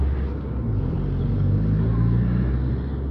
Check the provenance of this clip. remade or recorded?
recorded